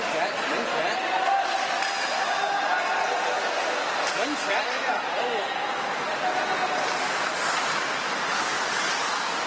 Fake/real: real